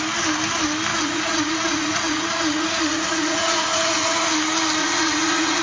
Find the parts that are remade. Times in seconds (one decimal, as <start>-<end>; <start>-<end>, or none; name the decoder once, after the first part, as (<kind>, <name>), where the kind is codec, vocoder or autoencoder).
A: 0.9-4.3 (vocoder, Vocos); 4.8-5.6